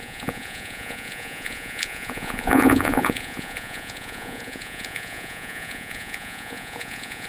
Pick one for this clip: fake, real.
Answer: fake